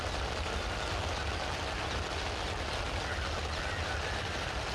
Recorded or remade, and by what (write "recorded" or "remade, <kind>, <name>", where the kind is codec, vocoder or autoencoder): recorded